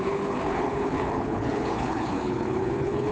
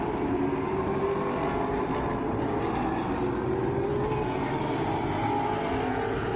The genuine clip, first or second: second